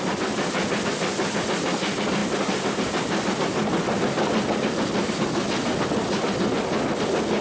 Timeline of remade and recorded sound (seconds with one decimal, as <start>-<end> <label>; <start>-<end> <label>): 0.0-7.4 recorded